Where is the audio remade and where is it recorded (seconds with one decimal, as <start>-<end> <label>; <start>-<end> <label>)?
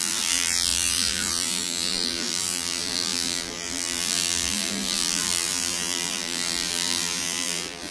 0.0-7.9 remade